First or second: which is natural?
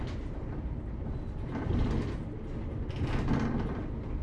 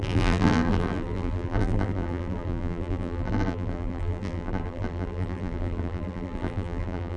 first